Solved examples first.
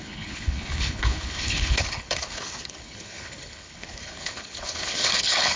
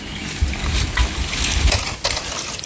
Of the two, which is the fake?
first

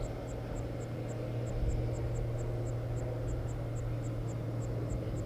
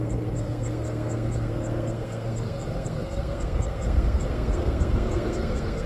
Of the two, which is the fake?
second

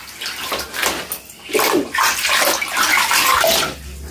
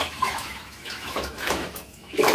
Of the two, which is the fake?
second